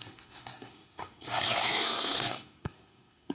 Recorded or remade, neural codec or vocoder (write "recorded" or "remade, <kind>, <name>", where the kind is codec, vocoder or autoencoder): remade, codec, SNAC